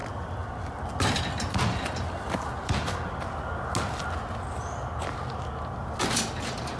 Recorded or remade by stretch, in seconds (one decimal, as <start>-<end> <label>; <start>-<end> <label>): 0.0-6.8 recorded